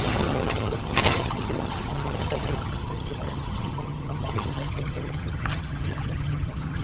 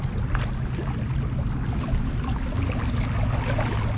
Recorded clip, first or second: second